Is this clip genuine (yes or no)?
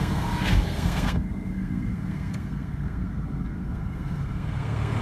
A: no